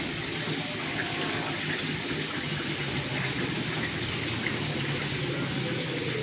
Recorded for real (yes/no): yes